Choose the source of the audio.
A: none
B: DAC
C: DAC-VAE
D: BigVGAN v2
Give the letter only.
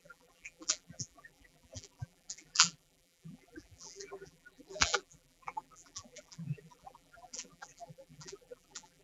D